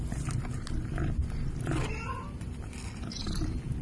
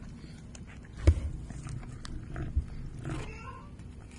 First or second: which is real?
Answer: second